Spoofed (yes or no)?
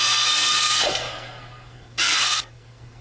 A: yes